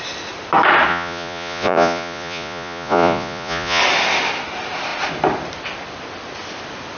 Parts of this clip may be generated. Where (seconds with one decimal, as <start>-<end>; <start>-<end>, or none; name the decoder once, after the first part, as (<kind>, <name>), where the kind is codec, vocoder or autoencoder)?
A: 0.9-3.8 (vocoder, Vocos)